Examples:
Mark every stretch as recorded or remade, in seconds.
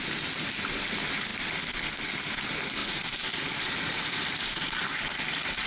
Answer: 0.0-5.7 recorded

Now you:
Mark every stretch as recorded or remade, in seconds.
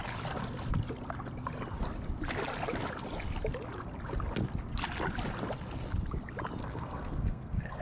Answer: 0.0-6.6 recorded; 6.6-7.8 remade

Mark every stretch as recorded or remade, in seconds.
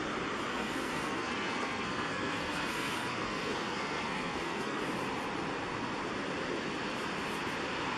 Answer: 0.0-0.5 recorded; 0.5-4.8 remade; 4.8-8.0 recorded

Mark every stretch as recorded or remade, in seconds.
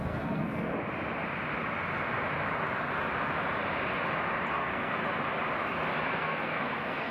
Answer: 0.0-0.7 remade; 0.7-4.5 recorded; 4.5-5.0 remade; 5.0-6.0 recorded; 6.0-7.1 remade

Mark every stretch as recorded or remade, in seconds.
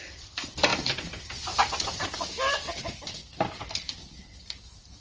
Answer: 0.0-5.0 recorded